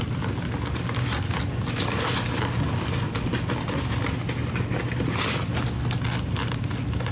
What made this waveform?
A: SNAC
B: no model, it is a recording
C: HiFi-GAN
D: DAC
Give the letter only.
B